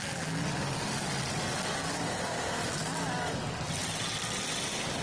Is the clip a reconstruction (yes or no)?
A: yes